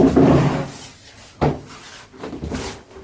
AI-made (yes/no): no